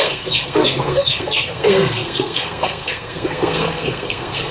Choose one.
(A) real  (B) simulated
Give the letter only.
B